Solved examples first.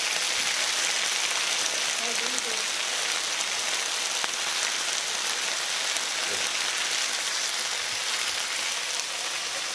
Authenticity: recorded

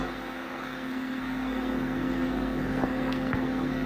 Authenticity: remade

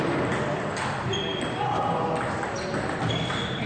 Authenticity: recorded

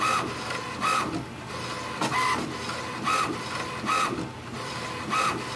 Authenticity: recorded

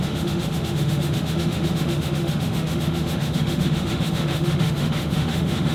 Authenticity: remade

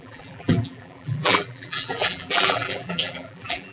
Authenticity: remade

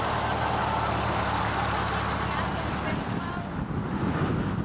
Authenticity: recorded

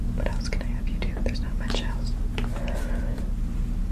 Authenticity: remade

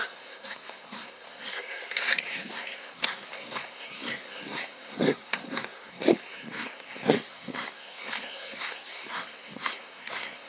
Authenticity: remade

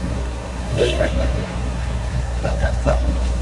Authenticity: remade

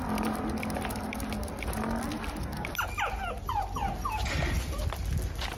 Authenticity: recorded